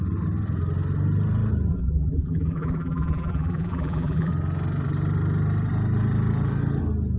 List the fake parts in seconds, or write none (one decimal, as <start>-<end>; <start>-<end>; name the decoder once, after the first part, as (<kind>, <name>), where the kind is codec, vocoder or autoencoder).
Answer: 1.7-4.3 (vocoder, BigVGAN v2)